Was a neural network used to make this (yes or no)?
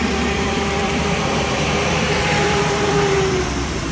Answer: yes